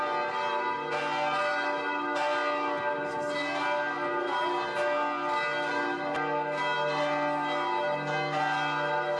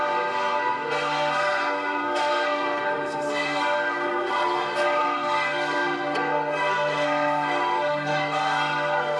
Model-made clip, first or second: second